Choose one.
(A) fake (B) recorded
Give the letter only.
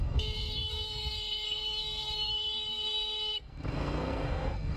A